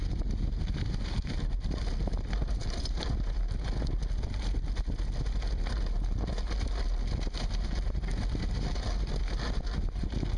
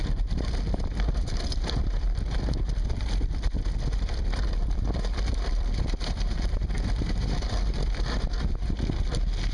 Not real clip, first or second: second